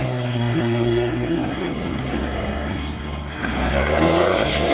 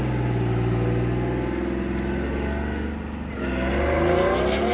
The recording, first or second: second